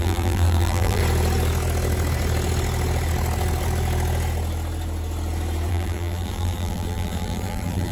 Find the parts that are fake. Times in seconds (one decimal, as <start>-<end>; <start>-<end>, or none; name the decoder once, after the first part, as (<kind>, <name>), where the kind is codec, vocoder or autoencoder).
0.0-1.0 (vocoder, BigVGAN v2); 5.7-7.9